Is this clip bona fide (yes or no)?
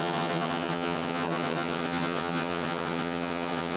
no